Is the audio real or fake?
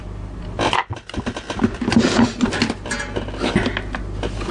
real